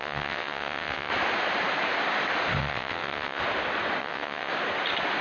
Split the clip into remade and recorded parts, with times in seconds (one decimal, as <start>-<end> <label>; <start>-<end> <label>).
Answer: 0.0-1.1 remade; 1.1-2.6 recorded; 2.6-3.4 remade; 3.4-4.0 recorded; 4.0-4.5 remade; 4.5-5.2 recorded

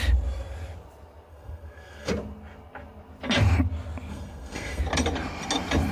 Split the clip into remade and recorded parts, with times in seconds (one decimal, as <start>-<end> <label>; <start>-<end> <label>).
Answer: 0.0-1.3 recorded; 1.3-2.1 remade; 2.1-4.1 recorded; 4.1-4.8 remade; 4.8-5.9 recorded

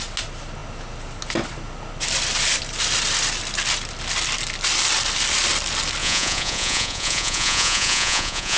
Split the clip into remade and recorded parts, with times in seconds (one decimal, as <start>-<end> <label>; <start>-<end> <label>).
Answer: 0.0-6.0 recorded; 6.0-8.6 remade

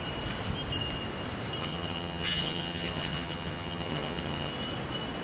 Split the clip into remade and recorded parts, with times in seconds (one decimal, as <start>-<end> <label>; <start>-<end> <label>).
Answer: 0.0-1.6 recorded; 1.6-4.5 remade; 4.5-5.2 recorded